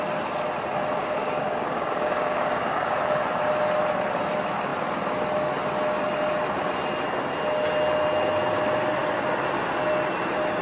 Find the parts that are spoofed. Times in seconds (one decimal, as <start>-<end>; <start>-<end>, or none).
1.0-3.0